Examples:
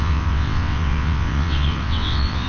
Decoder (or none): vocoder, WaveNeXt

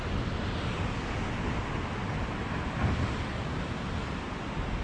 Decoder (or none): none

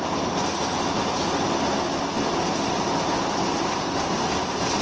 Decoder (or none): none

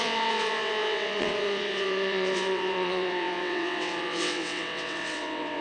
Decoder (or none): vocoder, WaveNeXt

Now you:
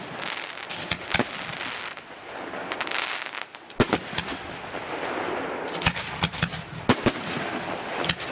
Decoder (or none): none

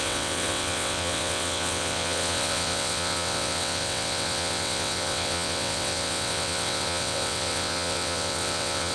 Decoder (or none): vocoder, WaveNeXt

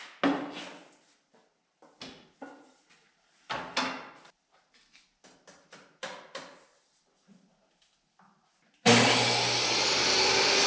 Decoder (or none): none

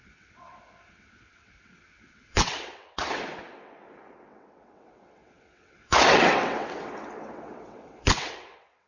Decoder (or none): vocoder, WaveNeXt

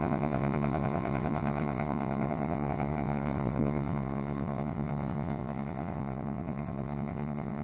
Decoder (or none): vocoder, WaveNeXt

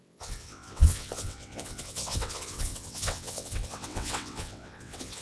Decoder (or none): vocoder, WaveNeXt